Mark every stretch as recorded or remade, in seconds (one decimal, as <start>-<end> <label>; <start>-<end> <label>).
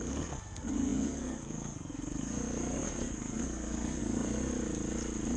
0.0-4.5 remade; 4.5-5.4 recorded